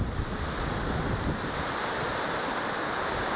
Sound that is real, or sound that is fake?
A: real